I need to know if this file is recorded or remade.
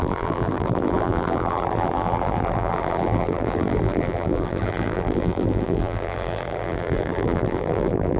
remade